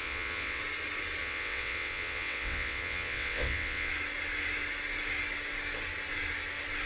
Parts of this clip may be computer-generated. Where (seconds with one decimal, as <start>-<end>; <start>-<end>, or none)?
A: 0.0-0.6; 1.2-3.9